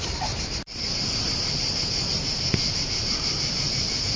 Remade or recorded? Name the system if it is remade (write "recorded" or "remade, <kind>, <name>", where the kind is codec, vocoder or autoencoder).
recorded